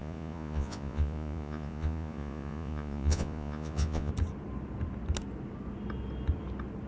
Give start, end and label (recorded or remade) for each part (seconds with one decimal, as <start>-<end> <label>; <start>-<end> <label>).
0.0-4.1 remade; 4.1-6.9 recorded